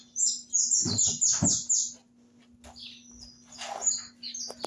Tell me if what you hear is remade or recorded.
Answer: recorded